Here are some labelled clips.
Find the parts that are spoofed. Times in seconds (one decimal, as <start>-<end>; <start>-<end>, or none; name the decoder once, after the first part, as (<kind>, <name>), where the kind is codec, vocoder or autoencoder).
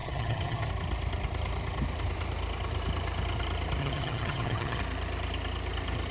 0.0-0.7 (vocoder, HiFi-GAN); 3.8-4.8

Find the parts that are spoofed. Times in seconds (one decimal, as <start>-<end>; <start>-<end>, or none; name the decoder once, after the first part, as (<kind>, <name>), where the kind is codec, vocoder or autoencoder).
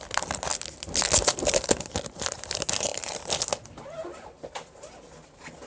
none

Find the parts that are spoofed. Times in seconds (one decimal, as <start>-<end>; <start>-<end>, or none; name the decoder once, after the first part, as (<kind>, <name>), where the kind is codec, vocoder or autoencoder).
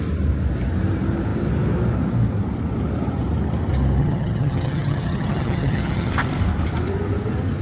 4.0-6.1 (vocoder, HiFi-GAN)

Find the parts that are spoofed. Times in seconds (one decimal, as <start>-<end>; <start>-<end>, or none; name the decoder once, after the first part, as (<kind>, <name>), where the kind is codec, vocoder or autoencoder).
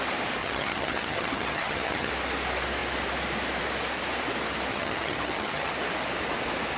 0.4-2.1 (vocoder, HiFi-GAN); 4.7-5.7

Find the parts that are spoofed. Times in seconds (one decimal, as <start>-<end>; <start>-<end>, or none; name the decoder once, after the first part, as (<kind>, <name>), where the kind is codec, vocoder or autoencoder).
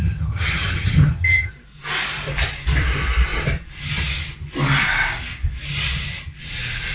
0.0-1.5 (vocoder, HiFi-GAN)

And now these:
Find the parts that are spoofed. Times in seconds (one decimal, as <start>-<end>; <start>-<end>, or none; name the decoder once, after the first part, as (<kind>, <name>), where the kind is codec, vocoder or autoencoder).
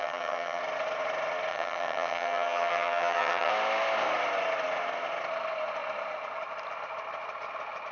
0.0-0.6 (vocoder, HiFi-GAN); 1.5-3.5